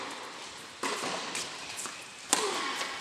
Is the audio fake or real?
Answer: real